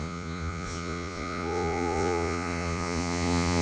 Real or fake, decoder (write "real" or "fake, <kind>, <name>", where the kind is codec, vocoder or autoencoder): fake, vocoder, Vocos